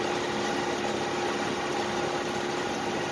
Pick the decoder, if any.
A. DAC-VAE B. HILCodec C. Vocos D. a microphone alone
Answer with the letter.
D